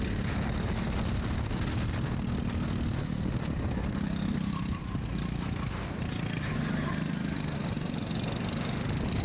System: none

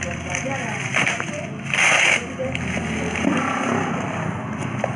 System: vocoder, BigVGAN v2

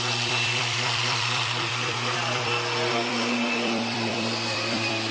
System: vocoder, BigVGAN v2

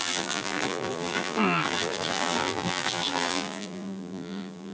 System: vocoder, BigVGAN v2